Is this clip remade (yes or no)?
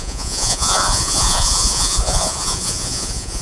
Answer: yes